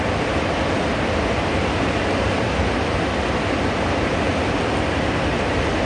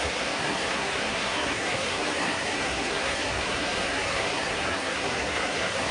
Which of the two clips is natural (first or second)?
first